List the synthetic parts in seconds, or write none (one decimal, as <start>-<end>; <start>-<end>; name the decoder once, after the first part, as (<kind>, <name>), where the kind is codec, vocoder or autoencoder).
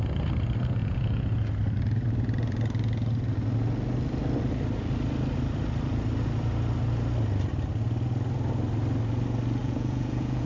0.8-1.5 (vocoder, Vocos); 9.6-10.5